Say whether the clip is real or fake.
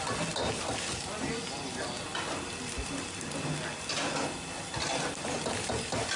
real